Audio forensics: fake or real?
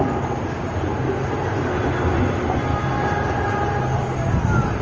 real